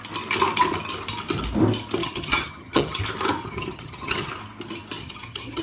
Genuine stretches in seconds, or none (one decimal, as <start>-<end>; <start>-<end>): 0.0-2.0; 3.0-3.4; 4.3-5.0